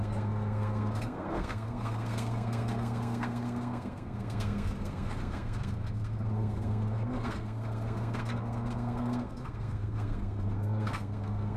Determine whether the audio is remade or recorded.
remade